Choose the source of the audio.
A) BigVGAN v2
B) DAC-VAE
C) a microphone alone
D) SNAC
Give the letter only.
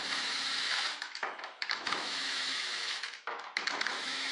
B